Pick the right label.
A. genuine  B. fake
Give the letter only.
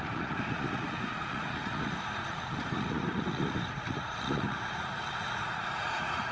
B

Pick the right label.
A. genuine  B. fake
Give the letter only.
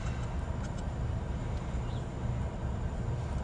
A